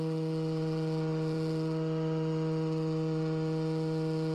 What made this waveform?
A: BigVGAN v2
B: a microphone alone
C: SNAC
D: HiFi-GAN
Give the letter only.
A